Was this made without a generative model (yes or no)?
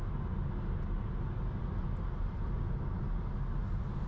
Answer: yes